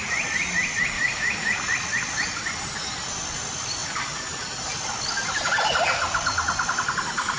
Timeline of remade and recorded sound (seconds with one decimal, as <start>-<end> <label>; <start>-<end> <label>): 0.0-7.4 recorded